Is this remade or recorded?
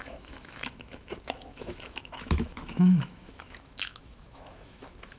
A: remade